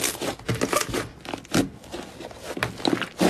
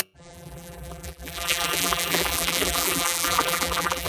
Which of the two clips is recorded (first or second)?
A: first